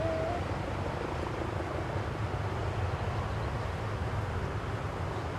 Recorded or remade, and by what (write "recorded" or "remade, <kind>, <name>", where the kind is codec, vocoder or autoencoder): recorded